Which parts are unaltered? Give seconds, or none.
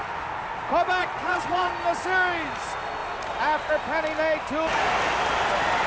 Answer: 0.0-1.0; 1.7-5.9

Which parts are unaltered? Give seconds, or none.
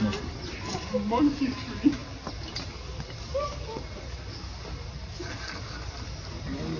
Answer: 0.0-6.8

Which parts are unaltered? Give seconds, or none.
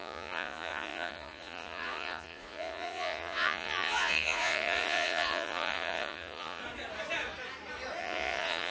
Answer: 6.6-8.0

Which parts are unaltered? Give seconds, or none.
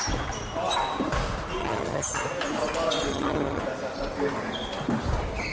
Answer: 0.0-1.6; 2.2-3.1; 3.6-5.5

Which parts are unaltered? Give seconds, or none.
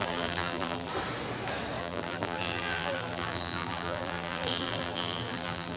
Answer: 0.9-1.8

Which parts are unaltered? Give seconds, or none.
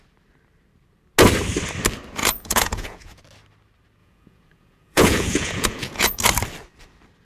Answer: 0.0-2.2; 3.2-4.0; 6.2-7.2